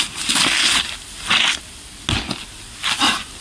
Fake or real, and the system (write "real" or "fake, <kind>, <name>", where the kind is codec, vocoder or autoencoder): real